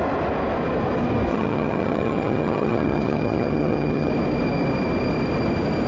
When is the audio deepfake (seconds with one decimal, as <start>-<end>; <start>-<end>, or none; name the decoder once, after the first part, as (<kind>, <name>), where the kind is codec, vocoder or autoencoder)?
1.3-4.1 (vocoder, HiFi-GAN)